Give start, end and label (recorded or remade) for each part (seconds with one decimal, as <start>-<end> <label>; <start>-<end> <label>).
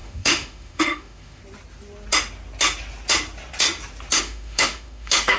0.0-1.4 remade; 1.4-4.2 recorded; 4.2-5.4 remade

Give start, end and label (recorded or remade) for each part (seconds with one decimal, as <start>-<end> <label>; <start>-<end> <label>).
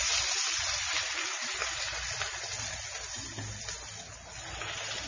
0.0-5.1 recorded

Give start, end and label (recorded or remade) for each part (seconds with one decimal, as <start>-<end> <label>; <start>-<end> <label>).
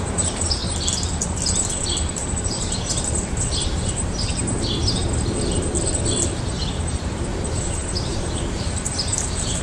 0.0-0.6 remade; 0.6-2.0 recorded; 2.0-5.0 remade; 5.0-6.6 recorded; 6.6-9.6 remade